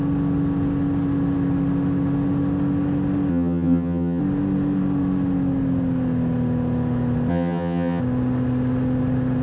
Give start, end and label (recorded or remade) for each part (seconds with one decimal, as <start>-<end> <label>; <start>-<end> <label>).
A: 0.0-3.3 recorded; 3.3-4.2 remade; 4.2-7.3 recorded; 7.3-8.0 remade; 8.0-9.4 recorded